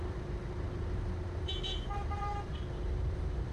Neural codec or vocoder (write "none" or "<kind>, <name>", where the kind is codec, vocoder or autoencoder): vocoder, BigVGAN v2